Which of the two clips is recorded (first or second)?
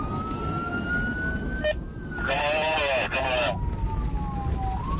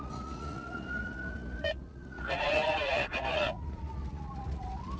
first